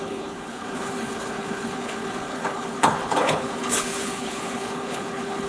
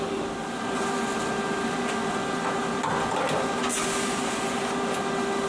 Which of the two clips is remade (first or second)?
first